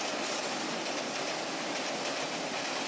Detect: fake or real real